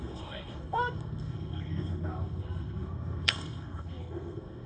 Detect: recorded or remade remade